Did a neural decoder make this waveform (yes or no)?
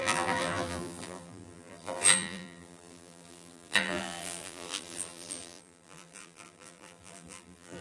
yes